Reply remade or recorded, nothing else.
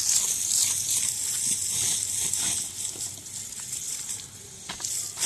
remade